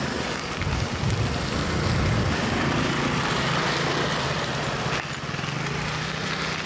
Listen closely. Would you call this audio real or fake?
real